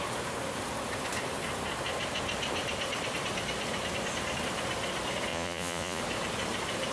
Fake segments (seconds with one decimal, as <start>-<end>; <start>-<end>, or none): 5.3-6.0